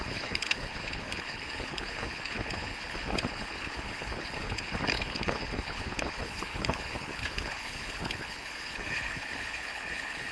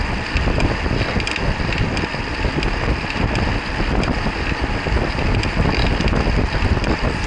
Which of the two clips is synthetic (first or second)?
first